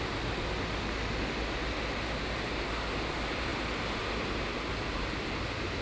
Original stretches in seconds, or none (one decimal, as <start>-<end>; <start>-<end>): 0.0-5.8